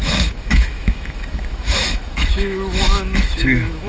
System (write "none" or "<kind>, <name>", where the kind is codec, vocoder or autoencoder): autoencoder, DAC-VAE